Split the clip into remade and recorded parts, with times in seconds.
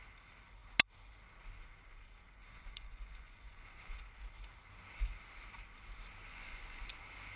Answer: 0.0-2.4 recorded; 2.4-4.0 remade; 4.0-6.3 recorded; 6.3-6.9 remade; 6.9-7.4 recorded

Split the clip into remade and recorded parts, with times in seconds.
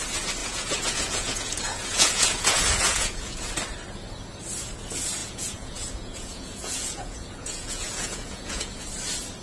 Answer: 0.0-0.4 recorded; 0.4-3.5 remade; 3.5-5.2 recorded; 5.2-8.7 remade; 8.7-9.4 recorded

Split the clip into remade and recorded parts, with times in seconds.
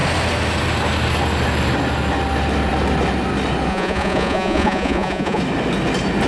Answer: 0.0-3.7 recorded; 3.7-5.4 remade; 5.4-6.3 recorded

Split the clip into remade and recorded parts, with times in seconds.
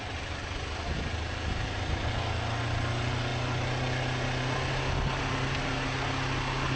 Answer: 0.0-6.8 recorded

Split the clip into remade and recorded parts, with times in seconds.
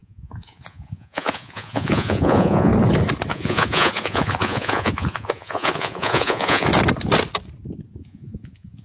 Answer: 0.0-2.7 remade; 2.7-3.3 recorded; 3.3-6.7 remade; 6.7-7.9 recorded; 7.9-8.8 remade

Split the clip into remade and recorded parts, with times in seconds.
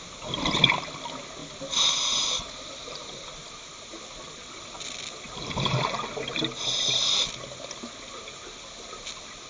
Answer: 0.0-9.5 recorded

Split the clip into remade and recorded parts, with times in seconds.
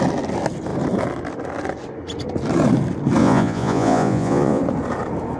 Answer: 0.0-3.2 recorded; 3.2-4.6 remade; 4.6-5.4 recorded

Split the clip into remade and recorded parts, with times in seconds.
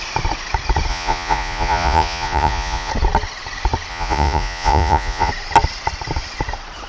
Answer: 0.0-0.9 recorded; 0.9-2.9 remade; 2.9-3.9 recorded; 3.9-5.3 remade; 5.3-6.9 recorded